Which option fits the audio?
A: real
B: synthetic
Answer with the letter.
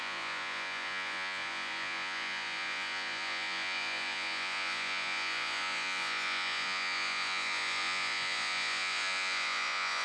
B